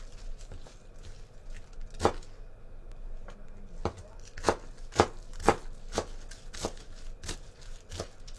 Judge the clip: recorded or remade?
recorded